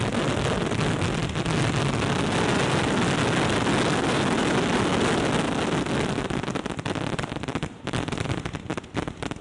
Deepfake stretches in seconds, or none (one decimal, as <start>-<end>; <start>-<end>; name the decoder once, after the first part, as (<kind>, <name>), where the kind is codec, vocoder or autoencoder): none

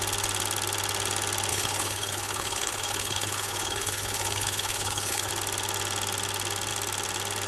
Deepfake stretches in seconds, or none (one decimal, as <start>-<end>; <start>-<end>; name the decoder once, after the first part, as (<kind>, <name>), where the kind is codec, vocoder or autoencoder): 1.5-5.3 (codec, HILCodec)